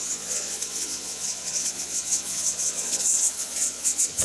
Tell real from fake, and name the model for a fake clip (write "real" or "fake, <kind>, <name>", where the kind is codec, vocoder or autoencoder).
fake, vocoder, Vocos